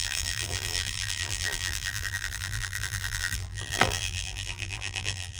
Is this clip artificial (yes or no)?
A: yes